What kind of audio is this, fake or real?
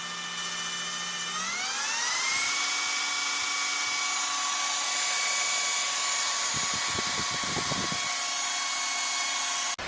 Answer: real